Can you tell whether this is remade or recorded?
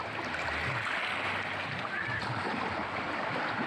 recorded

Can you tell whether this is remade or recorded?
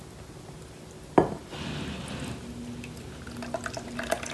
recorded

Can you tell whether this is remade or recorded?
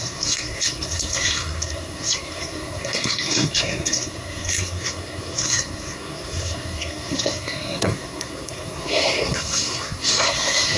remade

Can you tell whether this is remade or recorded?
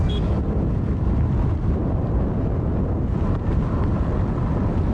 recorded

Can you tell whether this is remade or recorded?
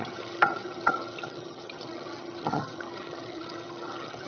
remade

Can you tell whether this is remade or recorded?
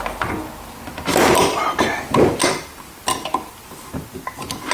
recorded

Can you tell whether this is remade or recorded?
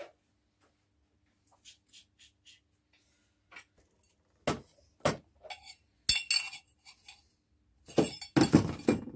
recorded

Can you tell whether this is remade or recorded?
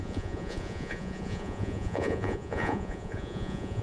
remade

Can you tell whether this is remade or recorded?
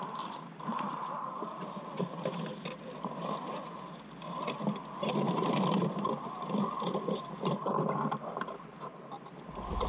recorded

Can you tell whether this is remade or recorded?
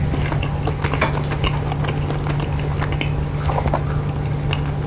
recorded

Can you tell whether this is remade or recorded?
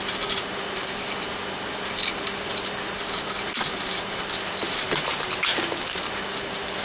recorded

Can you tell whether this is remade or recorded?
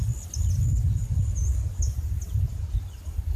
recorded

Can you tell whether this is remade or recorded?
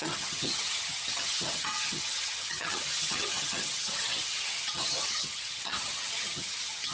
remade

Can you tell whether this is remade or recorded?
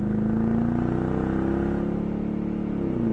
recorded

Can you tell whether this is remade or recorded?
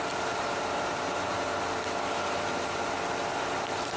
recorded